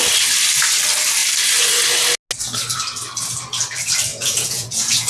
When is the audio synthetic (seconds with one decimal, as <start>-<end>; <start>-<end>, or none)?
4.1-5.1